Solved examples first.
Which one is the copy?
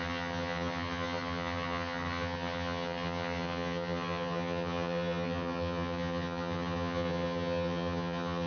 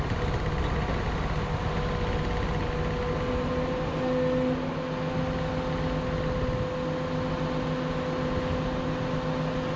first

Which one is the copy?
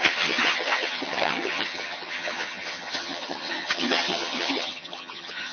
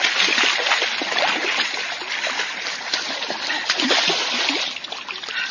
first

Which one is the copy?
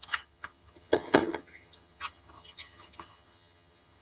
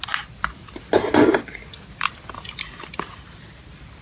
first